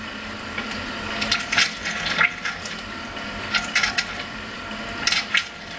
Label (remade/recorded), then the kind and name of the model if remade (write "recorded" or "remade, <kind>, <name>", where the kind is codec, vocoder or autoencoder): recorded